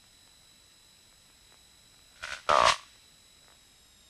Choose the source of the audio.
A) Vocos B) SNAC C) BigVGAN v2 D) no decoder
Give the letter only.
D